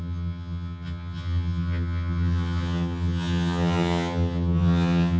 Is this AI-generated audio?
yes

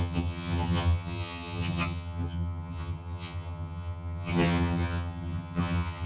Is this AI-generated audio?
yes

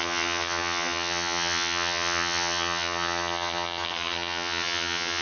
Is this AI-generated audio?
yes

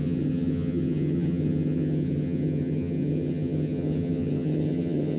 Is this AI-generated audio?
yes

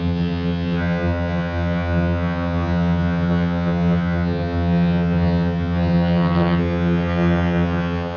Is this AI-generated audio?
yes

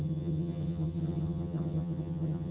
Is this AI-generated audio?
yes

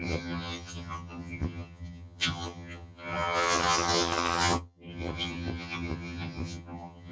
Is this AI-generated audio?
yes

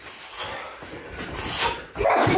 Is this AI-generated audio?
no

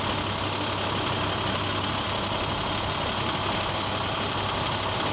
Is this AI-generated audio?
no